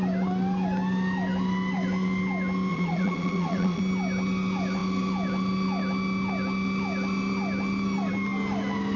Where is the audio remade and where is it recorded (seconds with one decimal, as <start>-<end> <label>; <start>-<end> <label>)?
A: 0.0-2.7 recorded; 2.7-3.8 remade; 3.8-9.0 recorded